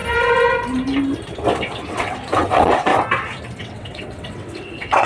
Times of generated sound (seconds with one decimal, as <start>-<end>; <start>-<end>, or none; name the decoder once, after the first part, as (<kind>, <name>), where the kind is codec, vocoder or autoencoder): 1.9-2.9 (vocoder, WaveNeXt); 3.6-5.1